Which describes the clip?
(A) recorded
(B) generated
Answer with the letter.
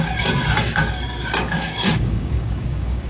B